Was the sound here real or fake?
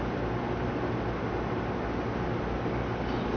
real